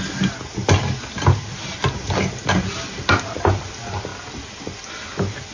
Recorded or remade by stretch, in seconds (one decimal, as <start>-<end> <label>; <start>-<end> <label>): 0.0-5.5 recorded